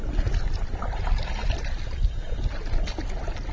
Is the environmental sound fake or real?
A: real